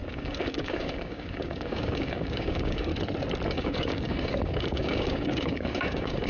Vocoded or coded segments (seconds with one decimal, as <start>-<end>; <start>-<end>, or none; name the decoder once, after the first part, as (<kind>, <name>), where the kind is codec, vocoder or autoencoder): 0.0-2.9 (codec, DAC); 3.5-6.3